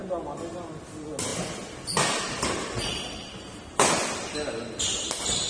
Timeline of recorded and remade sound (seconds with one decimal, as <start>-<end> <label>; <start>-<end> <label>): 0.0-5.5 recorded